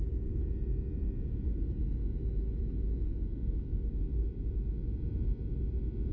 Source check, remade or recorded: recorded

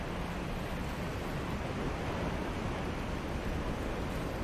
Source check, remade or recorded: recorded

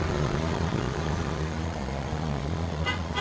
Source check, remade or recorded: remade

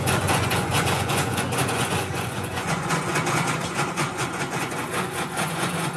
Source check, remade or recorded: remade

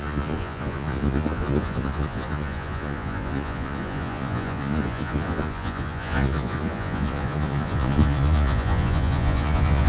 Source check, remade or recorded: remade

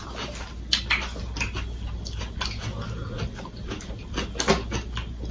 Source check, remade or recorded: recorded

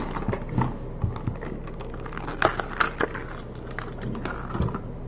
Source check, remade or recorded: recorded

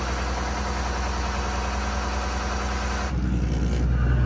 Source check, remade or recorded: recorded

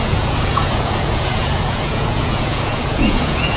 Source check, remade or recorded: remade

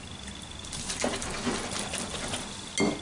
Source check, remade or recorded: recorded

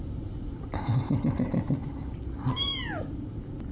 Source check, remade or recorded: recorded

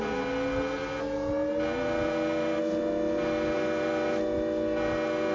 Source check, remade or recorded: recorded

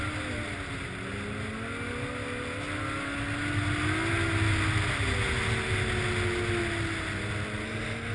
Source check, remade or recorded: recorded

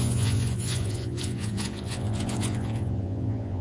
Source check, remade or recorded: remade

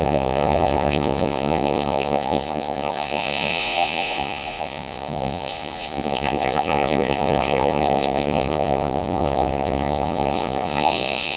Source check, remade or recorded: remade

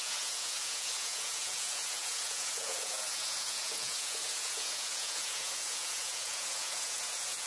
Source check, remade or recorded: remade